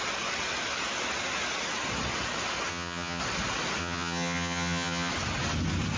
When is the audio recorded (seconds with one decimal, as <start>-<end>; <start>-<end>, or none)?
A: 0.0-2.7; 3.2-3.8; 5.1-6.0